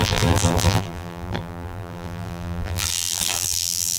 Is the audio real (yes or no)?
no